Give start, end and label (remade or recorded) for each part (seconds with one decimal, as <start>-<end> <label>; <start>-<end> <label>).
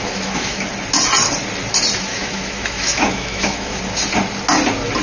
0.0-0.7 remade; 0.7-2.1 recorded; 2.1-3.8 remade; 3.8-5.0 recorded